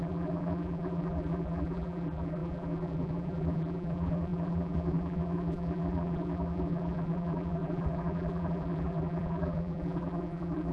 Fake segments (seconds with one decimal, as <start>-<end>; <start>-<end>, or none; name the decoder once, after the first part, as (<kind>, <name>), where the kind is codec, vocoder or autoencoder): 0.0-10.7 (vocoder, BigVGAN v2)